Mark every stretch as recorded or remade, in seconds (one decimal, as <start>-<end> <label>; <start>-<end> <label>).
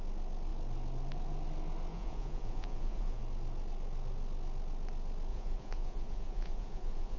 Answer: 0.0-1.9 recorded; 1.9-3.2 remade; 3.2-5.3 recorded; 5.3-7.2 remade